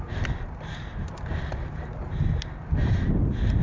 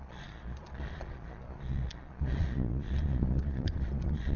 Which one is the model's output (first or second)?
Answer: second